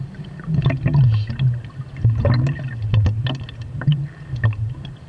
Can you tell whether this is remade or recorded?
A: recorded